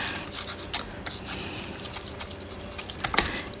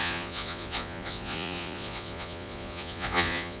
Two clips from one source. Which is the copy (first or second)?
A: second